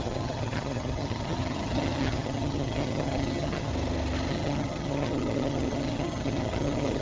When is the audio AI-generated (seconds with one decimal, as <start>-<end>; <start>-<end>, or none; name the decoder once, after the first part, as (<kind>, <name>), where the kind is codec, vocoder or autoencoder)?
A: 0.0-3.7 (vocoder, HiFi-GAN); 4.3-7.0